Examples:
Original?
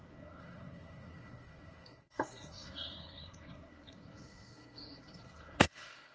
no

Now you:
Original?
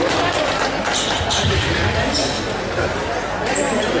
yes